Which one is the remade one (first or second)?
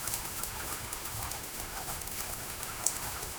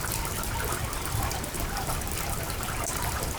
first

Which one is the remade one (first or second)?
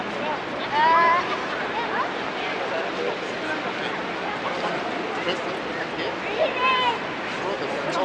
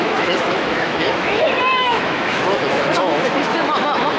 second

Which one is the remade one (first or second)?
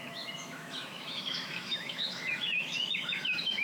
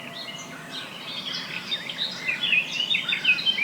first